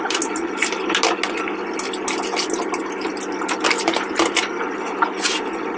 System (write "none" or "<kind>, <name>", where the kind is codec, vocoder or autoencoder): none